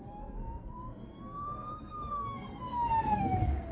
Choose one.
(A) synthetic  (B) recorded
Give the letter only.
A